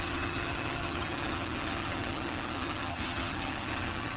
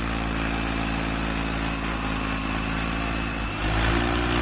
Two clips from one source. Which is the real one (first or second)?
second